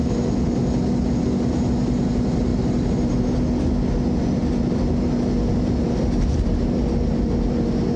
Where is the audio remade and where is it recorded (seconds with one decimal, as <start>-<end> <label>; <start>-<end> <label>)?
0.0-8.0 recorded